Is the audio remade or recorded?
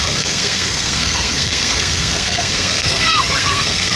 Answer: remade